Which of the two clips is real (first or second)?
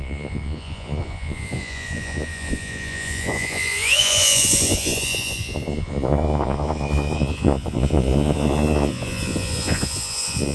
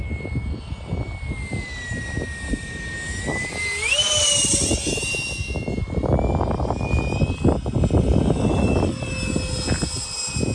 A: second